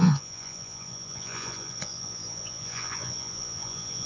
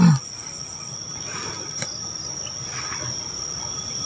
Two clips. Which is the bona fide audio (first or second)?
second